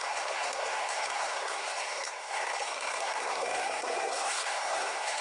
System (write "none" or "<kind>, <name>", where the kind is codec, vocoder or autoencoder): codec, SNAC